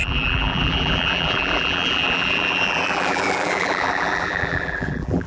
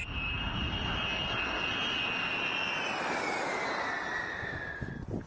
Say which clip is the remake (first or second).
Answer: first